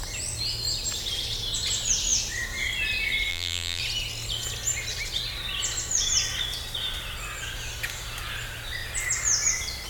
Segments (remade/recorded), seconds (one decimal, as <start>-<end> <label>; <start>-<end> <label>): 0.0-3.3 recorded; 3.3-3.8 remade; 3.8-9.9 recorded